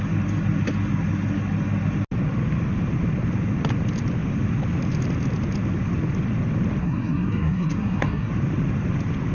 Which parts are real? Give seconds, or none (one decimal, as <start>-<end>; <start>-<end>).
0.0-6.8; 8.3-9.3